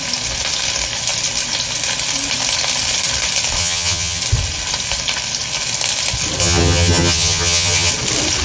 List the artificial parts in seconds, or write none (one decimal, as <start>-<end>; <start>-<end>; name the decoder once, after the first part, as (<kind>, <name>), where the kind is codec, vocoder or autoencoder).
3.6-4.2 (vocoder, HiFi-GAN); 6.4-7.9